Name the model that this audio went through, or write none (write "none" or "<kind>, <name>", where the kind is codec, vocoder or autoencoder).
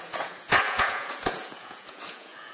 vocoder, Vocos